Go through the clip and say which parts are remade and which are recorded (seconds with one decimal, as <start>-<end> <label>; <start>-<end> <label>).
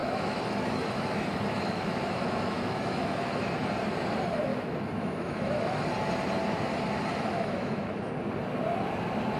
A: 0.0-3.7 remade; 3.7-4.5 recorded; 4.5-5.8 remade; 5.8-7.1 recorded; 7.1-8.1 remade; 8.1-9.4 recorded